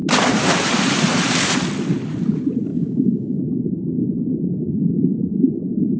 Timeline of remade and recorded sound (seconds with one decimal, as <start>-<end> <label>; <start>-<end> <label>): 0.0-2.7 recorded; 2.7-3.4 remade; 3.4-6.0 recorded